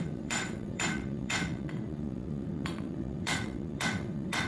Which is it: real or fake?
fake